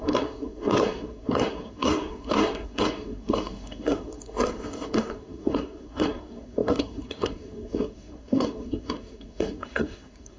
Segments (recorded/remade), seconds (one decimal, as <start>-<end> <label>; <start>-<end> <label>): 0.0-10.4 remade

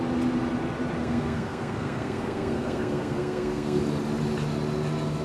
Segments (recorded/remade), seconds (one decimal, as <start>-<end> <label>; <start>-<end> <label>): 0.0-1.0 recorded; 1.0-3.8 remade; 3.8-5.2 recorded

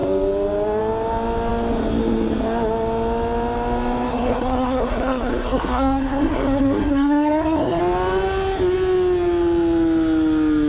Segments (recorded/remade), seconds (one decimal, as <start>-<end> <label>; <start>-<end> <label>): 0.0-4.1 recorded; 4.1-7.8 remade; 7.8-10.7 recorded

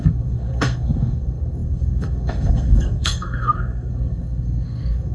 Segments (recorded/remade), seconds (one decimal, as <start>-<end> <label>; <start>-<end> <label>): 0.0-5.1 remade

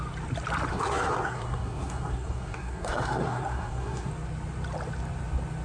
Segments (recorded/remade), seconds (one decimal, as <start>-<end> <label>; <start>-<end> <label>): 0.0-0.7 recorded; 0.7-4.1 remade; 4.1-5.6 recorded